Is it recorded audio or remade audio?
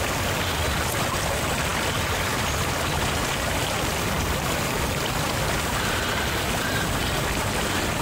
recorded